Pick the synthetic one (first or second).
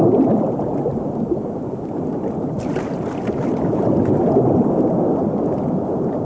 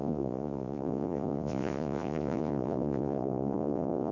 second